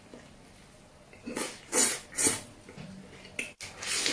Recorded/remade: recorded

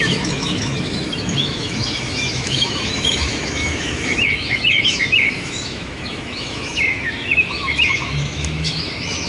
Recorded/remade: remade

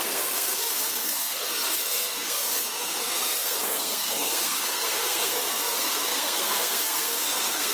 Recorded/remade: remade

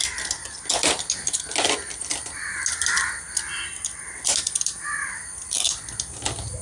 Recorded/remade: recorded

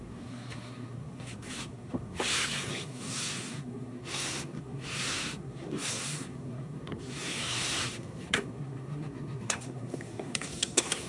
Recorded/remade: remade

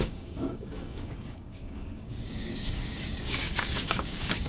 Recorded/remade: remade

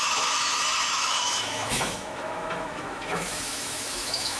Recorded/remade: remade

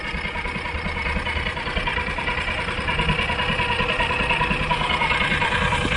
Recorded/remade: recorded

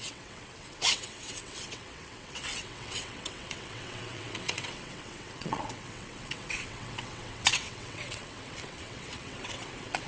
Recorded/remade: remade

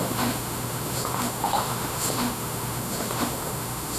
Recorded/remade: remade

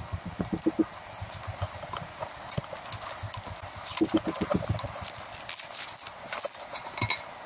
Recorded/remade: recorded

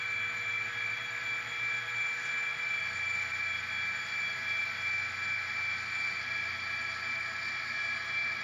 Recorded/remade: recorded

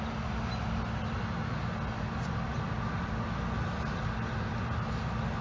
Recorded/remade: recorded